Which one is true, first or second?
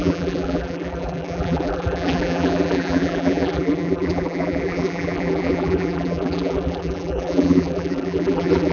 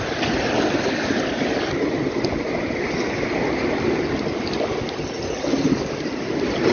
second